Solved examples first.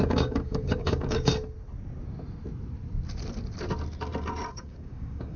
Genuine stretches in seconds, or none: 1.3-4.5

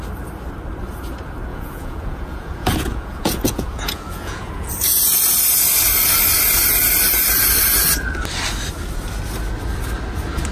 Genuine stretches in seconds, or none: 0.0-1.5; 4.7-10.5

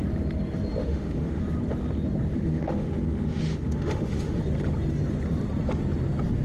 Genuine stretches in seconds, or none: 0.0-0.8; 1.4-2.3; 4.4-6.4

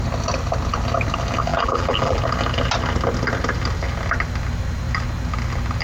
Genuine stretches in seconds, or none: 0.0-1.5; 2.2-5.8

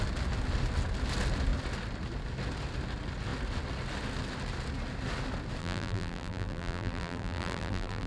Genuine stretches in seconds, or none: 0.0-5.6

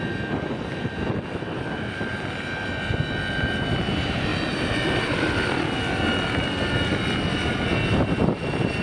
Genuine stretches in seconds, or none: 0.0-8.8

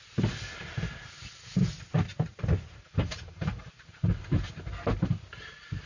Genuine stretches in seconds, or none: 0.0-2.3; 4.2-5.9

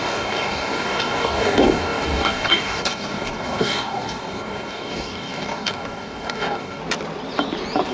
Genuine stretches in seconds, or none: 6.8-7.9